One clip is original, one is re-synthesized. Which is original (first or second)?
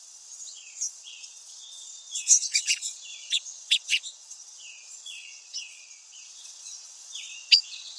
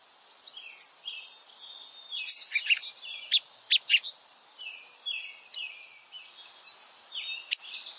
second